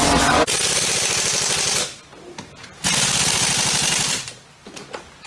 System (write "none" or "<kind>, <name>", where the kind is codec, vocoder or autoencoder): none